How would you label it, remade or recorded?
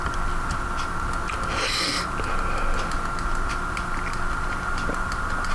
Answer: recorded